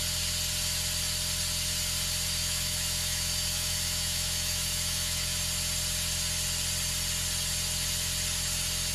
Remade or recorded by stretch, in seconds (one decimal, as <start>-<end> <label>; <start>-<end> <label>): 0.0-2.4 recorded; 2.4-5.4 remade; 5.4-8.9 recorded